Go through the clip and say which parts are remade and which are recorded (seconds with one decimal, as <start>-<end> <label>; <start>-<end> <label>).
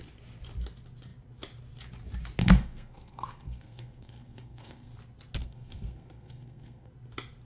0.0-2.4 recorded; 2.4-4.9 remade; 4.9-5.4 recorded; 5.4-6.9 remade; 6.9-7.5 recorded